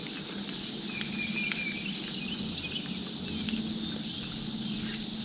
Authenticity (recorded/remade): recorded